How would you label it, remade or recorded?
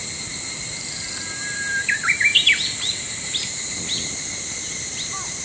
remade